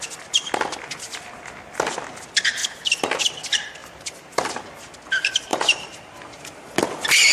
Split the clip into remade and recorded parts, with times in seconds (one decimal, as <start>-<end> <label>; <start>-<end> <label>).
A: 0.0-3.8 recorded; 3.8-4.6 remade; 4.6-5.5 recorded; 5.5-6.6 remade; 6.6-7.3 recorded